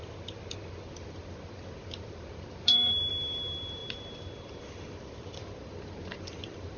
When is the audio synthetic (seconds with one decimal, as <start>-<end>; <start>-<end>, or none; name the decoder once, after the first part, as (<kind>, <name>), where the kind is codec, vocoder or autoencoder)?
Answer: 0.0-6.8 (vocoder, BigVGAN v2)